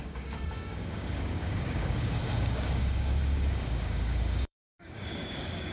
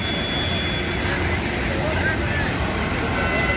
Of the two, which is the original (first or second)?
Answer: second